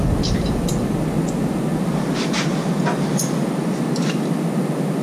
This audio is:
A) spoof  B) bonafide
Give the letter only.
B